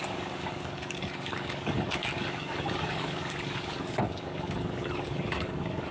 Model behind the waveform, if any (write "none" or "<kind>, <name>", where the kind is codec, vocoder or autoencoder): codec, DAC